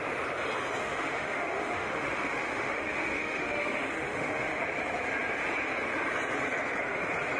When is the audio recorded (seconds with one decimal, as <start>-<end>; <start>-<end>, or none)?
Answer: 0.0-0.8; 4.6-7.4